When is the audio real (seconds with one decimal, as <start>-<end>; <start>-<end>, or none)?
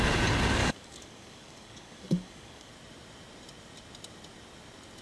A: 0.0-0.6; 2.7-5.0